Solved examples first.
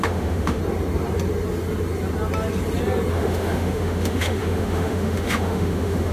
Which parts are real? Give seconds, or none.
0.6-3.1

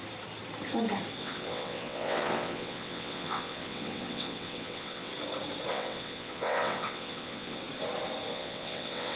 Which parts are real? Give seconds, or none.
0.0-1.2; 5.1-5.7; 7.6-8.3

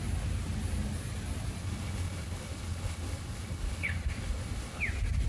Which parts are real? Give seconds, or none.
0.0-1.6; 4.8-5.3